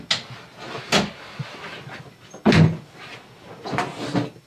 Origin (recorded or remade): recorded